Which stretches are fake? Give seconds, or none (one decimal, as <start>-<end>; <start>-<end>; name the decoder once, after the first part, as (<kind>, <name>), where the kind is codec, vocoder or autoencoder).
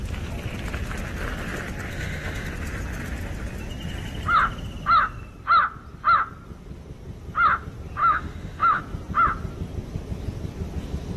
1.9-2.5 (autoencoder, DAC-VAE); 8.0-8.8